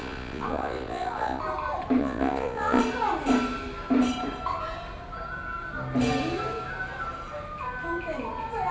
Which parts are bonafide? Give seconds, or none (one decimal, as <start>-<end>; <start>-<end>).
1.4-2.0; 2.8-8.7